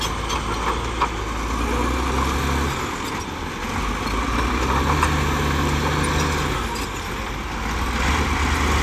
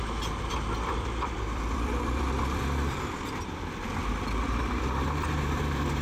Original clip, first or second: first